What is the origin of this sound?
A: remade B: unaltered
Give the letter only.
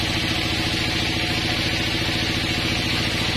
B